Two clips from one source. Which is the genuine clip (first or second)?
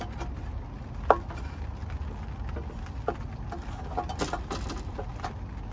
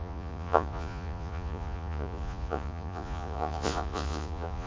first